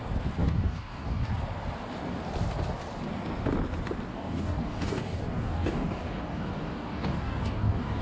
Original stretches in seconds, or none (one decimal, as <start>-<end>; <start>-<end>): 0.0-0.4; 1.3-4.1